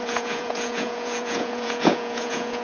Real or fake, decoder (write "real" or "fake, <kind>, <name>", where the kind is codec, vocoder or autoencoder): fake, vocoder, Vocos